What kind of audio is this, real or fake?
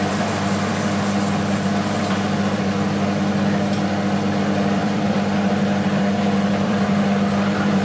fake